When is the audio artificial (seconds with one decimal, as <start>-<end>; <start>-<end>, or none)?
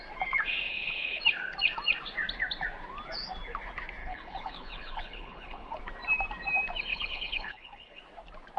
0.7-1.2; 4.0-5.8; 6.9-8.0